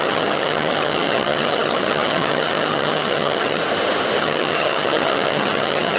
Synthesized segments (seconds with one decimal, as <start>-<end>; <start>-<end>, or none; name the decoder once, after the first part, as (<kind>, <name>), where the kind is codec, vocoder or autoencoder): 0.0-3.6 (vocoder, HiFi-GAN); 4.2-6.0